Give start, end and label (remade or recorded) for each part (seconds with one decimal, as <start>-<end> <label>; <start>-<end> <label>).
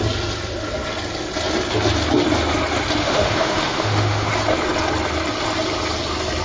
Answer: 0.0-3.0 recorded; 3.0-4.3 remade; 4.3-6.4 recorded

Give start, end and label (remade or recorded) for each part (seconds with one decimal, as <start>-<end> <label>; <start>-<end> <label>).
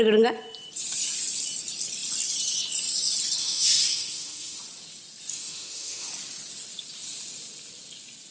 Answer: 0.0-3.4 recorded; 3.4-4.6 remade; 4.6-5.3 recorded; 5.3-6.1 remade; 6.1-8.3 recorded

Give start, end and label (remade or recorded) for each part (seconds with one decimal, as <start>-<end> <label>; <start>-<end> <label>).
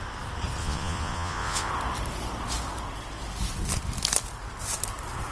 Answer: 0.0-0.6 recorded; 0.6-1.7 remade; 1.7-5.3 recorded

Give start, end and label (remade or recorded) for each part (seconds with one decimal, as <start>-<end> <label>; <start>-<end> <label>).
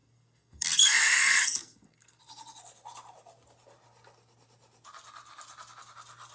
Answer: 0.0-2.2 remade; 2.2-6.3 recorded